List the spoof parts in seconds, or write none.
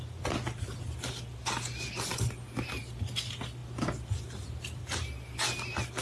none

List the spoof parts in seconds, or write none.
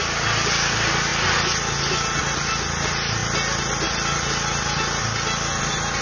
none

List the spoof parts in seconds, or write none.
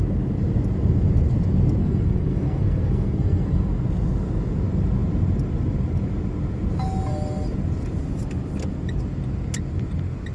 1.8-3.7 (codec, SNAC)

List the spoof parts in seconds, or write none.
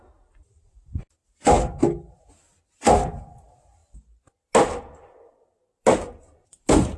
none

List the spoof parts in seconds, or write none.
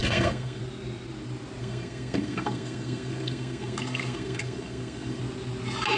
0.0-0.6 (codec, SNAC); 1.6-5.2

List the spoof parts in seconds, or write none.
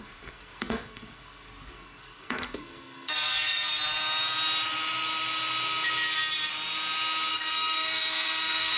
0.0-3.8 (codec, SNAC); 7.3-8.8